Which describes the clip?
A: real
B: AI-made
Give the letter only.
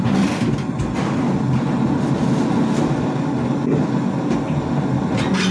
A